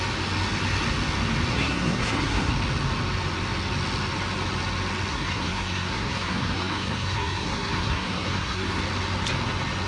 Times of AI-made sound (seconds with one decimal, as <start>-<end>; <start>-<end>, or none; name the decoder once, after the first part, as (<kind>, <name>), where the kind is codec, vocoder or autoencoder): 1.5-2.5 (codec, SNAC); 5.1-8.8